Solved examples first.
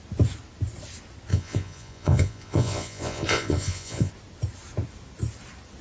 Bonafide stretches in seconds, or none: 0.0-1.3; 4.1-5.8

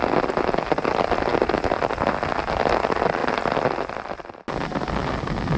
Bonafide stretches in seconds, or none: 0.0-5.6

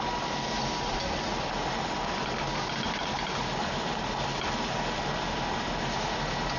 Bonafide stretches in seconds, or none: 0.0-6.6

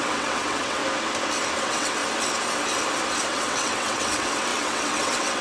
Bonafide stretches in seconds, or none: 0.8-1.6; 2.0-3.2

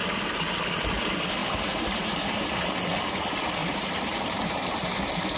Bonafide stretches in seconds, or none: 0.0-1.4; 2.0-3.6; 4.9-5.4

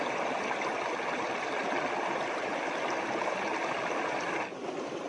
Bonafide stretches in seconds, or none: 0.0-5.1

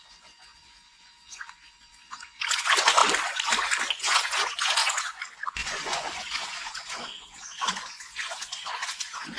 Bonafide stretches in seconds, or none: 3.0-3.9